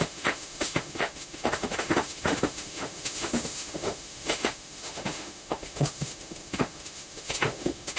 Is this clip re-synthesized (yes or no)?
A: yes